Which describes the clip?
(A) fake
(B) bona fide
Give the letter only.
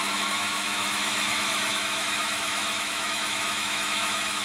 A